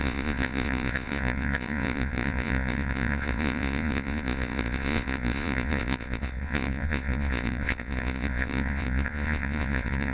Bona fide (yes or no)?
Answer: no